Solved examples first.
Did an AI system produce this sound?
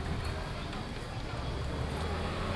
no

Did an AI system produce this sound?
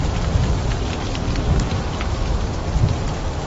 no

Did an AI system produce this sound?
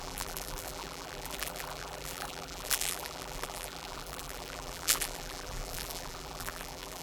yes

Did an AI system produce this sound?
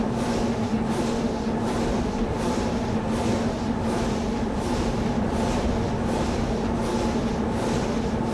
no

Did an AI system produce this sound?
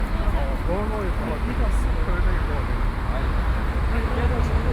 no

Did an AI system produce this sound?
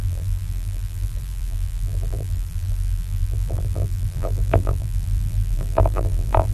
yes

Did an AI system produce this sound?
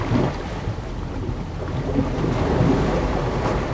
yes